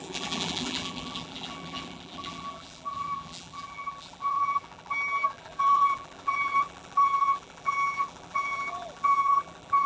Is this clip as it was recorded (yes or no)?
no